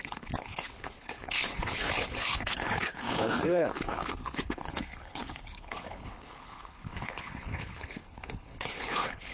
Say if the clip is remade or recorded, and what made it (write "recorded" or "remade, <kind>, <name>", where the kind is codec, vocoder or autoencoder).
remade, codec, HILCodec